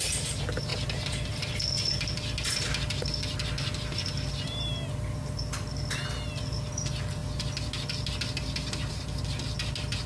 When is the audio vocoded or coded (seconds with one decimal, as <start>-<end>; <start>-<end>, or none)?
none

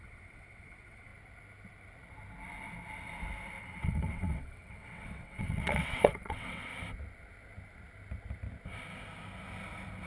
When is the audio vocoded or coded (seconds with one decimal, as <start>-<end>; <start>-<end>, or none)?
0.0-1.1; 3.6-6.7

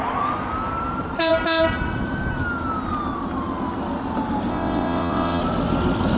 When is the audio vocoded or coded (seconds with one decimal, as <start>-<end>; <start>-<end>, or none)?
4.5-5.4

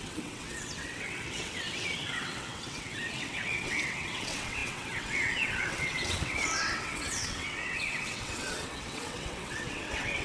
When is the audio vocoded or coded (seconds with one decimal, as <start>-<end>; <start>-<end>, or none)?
0.0-10.2

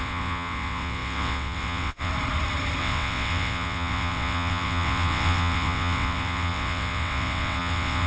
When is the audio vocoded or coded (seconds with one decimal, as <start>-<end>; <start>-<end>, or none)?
0.0-2.1; 2.8-8.1

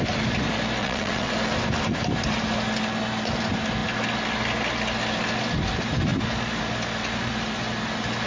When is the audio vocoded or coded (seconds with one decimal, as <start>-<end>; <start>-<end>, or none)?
0.8-1.3

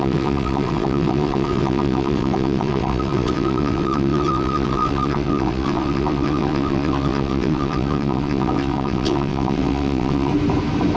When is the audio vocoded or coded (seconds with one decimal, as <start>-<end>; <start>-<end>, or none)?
0.0-10.3